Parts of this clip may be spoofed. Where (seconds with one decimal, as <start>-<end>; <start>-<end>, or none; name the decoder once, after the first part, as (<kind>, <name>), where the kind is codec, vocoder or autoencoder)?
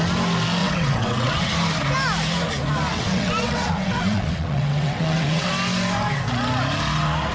0.6-1.5 (vocoder, WaveNeXt); 2.9-5.5